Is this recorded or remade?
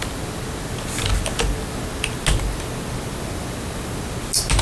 recorded